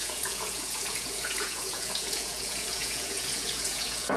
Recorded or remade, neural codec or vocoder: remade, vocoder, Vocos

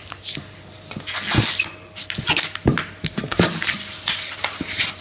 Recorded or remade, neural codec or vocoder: recorded